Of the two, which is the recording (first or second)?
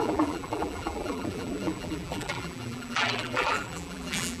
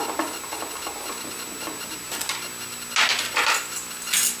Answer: second